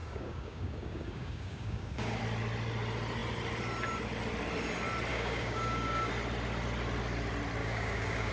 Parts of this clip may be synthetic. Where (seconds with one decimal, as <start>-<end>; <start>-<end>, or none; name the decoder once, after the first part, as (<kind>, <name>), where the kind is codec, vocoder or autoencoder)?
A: 0.0-2.2 (codec, DAC); 5.1-6.1; 7.6-8.3